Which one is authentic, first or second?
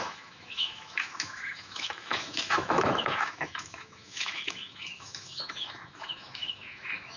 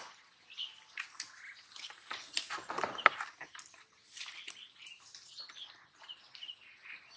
second